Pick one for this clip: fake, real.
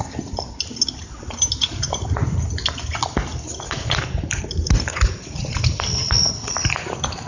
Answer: real